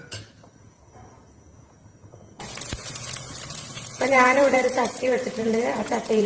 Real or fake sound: fake